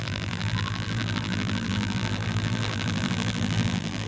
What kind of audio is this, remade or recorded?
remade